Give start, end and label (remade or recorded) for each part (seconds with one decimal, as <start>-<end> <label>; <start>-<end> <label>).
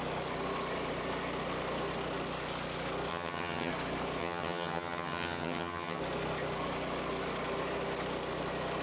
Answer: 0.0-3.1 recorded; 3.1-3.7 remade; 3.7-4.2 recorded; 4.2-6.0 remade; 6.0-8.8 recorded